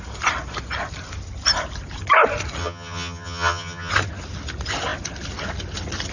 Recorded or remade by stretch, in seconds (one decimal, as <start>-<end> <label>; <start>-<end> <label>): 0.0-2.6 recorded; 2.6-3.9 remade; 3.9-6.1 recorded